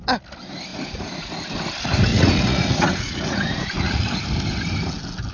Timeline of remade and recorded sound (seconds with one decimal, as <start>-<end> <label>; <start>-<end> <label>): 0.0-0.7 recorded; 0.7-1.3 remade; 1.3-2.1 recorded; 2.1-4.1 remade; 4.1-5.3 recorded